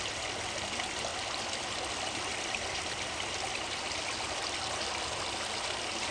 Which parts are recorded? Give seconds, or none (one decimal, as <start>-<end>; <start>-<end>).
0.0-1.1; 3.3-6.1